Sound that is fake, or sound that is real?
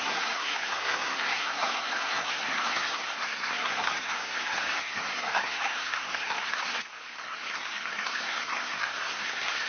fake